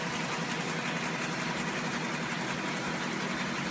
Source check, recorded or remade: recorded